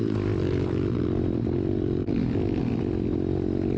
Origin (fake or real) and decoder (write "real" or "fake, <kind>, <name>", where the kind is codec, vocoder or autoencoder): real